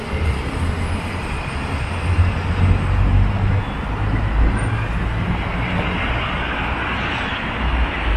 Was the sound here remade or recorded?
recorded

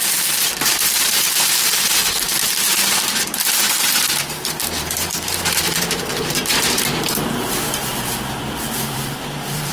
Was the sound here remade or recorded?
remade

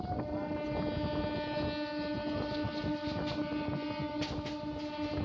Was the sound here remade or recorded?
recorded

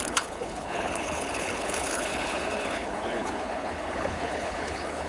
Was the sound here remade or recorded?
remade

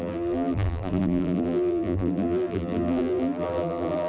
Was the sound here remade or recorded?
remade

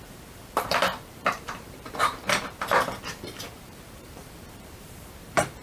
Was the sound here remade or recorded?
remade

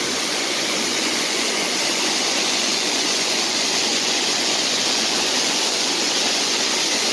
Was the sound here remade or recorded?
remade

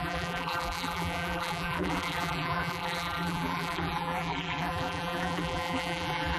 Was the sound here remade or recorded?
remade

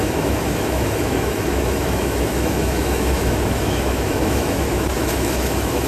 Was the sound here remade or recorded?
remade